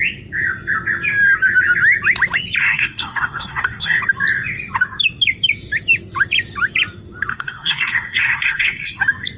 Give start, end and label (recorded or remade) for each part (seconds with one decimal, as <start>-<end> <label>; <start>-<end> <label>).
0.0-2.6 recorded; 2.6-4.0 remade; 4.0-7.3 recorded; 7.3-9.0 remade; 9.0-9.4 recorded